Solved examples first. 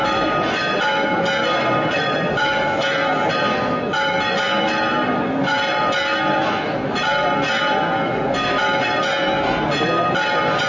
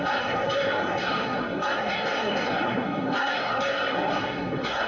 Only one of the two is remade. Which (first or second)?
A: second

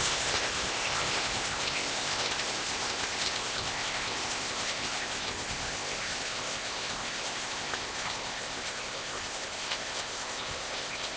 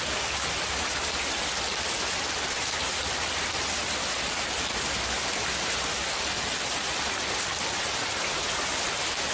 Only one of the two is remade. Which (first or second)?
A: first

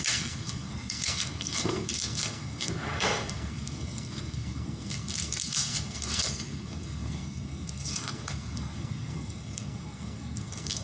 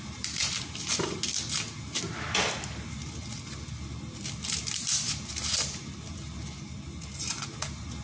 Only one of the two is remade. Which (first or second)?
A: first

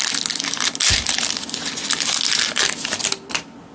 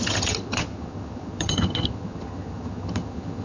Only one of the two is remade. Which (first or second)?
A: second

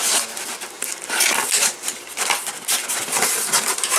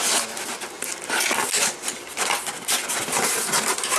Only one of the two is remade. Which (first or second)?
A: first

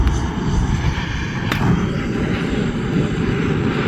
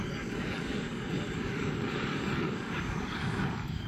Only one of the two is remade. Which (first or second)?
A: second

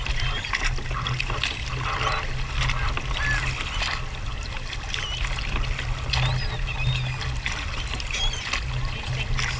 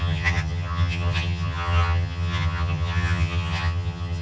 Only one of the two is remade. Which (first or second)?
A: second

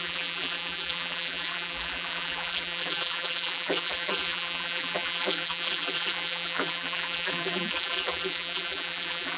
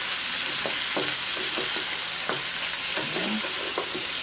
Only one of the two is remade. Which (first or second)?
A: first